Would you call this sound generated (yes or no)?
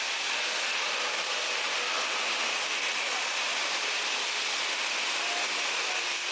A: no